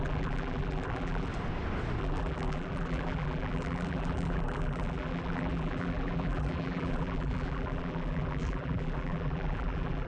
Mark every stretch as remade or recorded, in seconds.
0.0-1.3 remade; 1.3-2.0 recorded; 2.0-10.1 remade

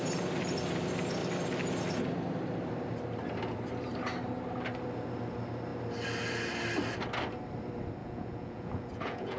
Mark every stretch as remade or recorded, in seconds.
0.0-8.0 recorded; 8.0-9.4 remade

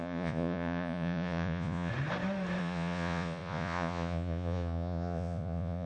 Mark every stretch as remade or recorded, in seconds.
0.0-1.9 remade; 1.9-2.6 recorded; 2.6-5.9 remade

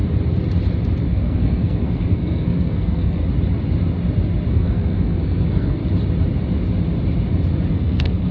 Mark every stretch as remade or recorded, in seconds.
0.0-1.0 recorded; 1.0-3.2 remade; 3.2-4.5 recorded; 4.5-5.8 remade; 5.8-7.7 recorded; 7.7-8.3 remade